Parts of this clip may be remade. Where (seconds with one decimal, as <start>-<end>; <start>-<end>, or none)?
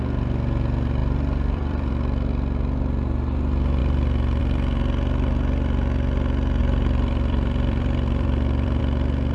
1.0-1.9; 6.6-8.8